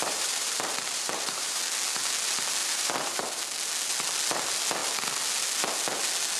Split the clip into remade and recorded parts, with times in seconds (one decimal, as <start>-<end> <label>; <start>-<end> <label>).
0.0-1.6 remade; 1.6-2.6 recorded; 2.6-3.4 remade; 3.4-6.4 recorded